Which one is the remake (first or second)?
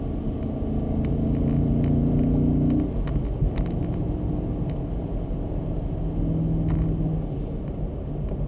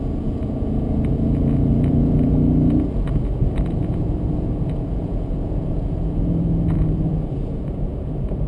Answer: second